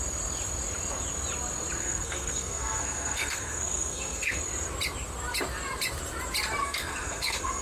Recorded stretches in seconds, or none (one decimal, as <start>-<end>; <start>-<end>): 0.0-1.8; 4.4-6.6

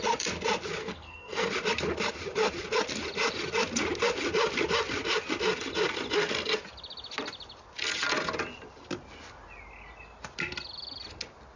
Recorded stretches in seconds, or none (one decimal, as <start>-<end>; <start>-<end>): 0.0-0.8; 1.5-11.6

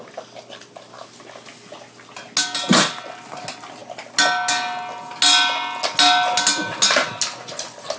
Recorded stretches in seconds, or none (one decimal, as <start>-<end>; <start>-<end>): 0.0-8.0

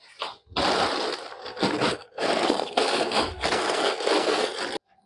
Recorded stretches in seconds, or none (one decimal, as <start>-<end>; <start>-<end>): 0.0-1.4; 4.5-5.1

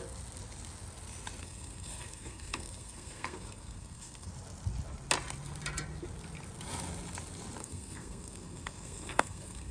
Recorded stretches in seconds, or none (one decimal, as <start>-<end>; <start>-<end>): 0.0-1.4; 4.3-7.6